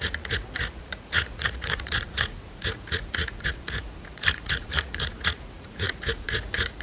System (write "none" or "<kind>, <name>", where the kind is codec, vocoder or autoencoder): vocoder, Vocos